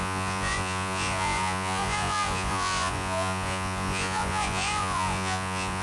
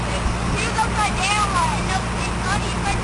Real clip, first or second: second